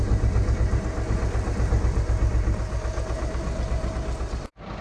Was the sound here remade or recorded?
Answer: recorded